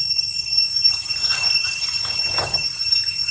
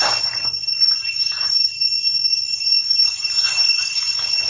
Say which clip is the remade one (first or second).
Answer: first